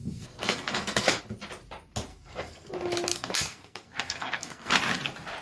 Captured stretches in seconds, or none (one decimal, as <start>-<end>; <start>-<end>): 1.2-2.1; 2.7-3.1; 4.8-5.4

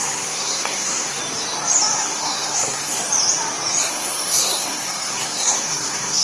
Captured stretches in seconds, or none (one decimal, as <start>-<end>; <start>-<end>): 1.2-2.0; 3.0-3.9